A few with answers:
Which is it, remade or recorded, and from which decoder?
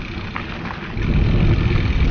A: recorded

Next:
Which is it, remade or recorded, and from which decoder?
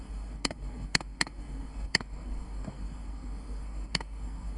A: remade, codec, SNAC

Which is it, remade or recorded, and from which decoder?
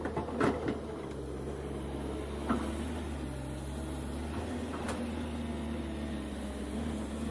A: recorded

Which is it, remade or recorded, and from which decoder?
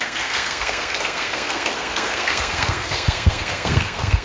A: remade, codec, SNAC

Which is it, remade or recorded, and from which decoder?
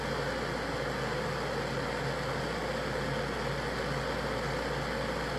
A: recorded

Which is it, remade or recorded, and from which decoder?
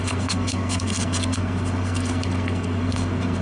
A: remade, codec, SNAC